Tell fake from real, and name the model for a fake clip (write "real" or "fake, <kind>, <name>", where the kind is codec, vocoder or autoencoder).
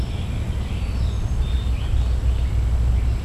real